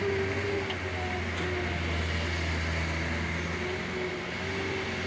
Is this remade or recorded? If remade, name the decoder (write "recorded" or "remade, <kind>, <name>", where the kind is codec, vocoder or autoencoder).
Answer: recorded